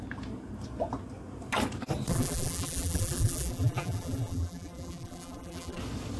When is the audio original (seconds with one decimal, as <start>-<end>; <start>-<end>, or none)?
0.0-2.1; 5.8-6.2